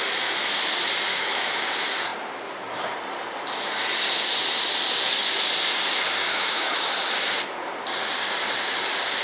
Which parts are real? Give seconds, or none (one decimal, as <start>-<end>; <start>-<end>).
0.0-1.1; 1.7-6.3; 6.9-9.2